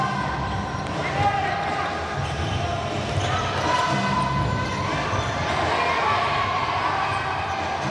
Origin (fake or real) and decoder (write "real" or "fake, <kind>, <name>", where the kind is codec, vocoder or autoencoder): real